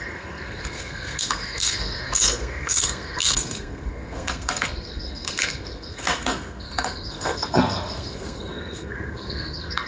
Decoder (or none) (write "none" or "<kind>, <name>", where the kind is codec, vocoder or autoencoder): codec, SNAC